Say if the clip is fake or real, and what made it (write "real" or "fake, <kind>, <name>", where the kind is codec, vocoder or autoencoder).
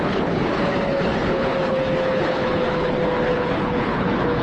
fake, codec, HILCodec